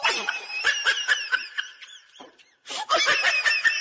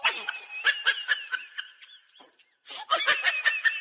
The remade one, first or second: first